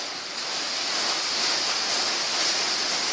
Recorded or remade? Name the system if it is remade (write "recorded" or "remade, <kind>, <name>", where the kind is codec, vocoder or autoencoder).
recorded